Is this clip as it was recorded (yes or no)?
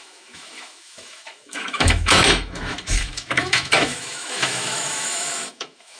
no